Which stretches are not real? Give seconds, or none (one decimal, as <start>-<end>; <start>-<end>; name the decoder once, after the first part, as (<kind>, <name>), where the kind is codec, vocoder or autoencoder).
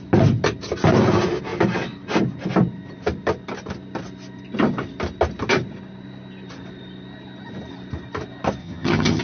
8.6-9.2 (vocoder, HiFi-GAN)